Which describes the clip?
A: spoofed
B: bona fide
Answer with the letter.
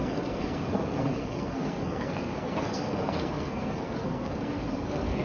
A